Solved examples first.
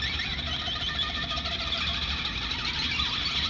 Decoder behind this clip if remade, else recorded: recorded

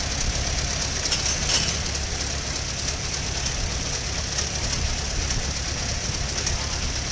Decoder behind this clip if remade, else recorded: recorded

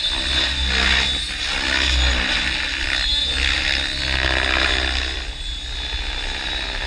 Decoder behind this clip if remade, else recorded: recorded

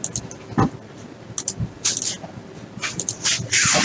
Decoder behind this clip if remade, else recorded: recorded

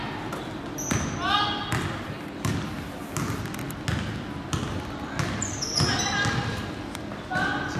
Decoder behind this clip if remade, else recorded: recorded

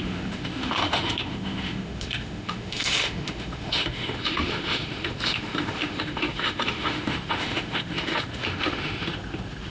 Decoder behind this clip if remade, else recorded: remade, autoencoder, DAC-VAE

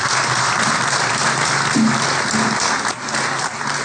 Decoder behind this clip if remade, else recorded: recorded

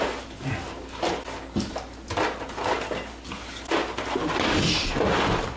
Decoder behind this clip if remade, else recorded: recorded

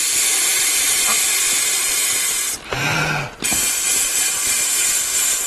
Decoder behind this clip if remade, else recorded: recorded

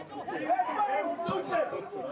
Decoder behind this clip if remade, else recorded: remade, vocoder, BigVGAN v2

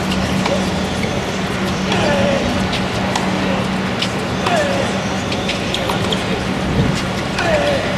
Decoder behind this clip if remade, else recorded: recorded